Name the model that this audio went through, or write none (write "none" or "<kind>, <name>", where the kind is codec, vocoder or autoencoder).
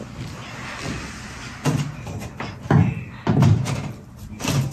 none